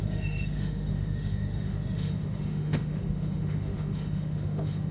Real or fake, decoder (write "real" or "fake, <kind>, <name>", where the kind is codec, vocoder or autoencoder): fake, autoencoder, DAC-VAE